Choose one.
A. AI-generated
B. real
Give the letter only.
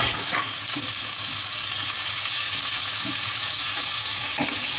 A